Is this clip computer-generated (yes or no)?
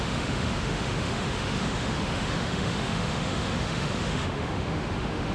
yes